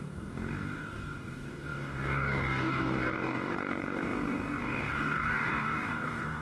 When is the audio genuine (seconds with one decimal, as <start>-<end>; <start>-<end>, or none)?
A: none